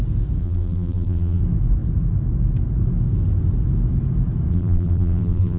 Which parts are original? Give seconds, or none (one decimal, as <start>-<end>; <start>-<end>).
0.0-0.4; 1.4-4.5